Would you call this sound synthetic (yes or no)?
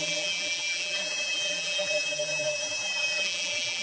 yes